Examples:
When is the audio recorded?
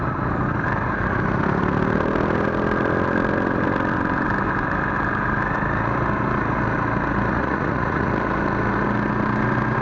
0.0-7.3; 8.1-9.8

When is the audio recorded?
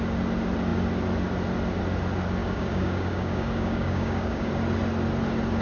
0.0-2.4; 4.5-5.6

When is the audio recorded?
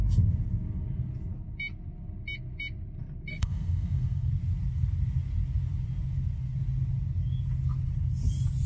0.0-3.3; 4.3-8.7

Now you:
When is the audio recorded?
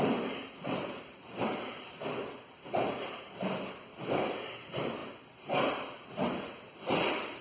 0.0-7.4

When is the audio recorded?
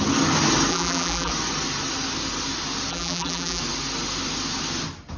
0.0-0.7; 1.3-2.9; 3.6-5.2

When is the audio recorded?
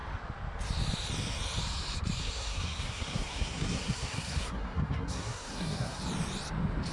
0.0-2.2; 6.0-6.9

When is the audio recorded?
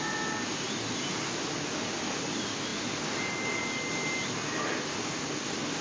0.0-5.8